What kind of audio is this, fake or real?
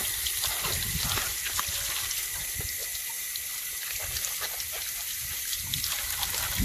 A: real